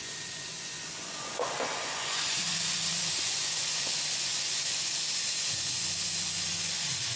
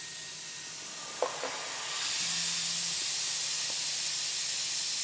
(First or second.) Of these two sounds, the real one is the second